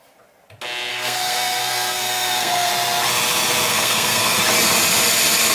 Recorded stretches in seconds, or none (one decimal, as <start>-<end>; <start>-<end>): 0.0-0.9; 2.7-3.7; 4.4-5.5